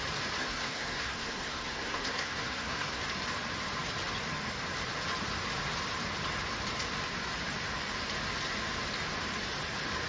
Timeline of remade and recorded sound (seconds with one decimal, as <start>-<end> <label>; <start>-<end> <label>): 0.0-0.4 recorded; 0.4-3.0 remade; 3.0-10.1 recorded